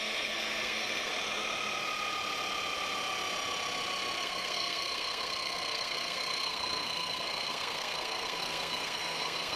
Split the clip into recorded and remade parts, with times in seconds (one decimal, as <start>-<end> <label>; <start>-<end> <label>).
0.0-1.1 remade; 1.1-4.2 recorded; 4.2-9.6 remade